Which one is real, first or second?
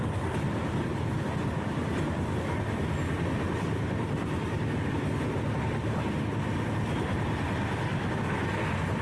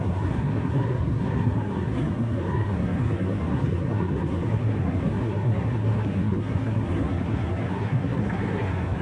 first